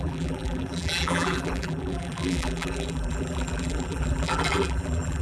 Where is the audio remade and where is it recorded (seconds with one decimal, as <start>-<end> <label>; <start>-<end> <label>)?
0.0-5.2 remade